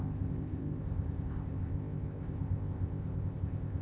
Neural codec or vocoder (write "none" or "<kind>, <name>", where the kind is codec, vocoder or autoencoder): codec, ZipCodec